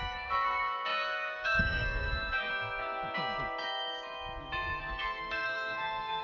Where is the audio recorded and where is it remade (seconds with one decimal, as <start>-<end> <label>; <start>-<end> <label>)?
0.0-2.5 remade; 2.5-4.8 recorded; 4.8-6.2 remade